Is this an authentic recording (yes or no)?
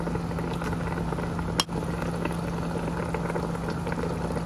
yes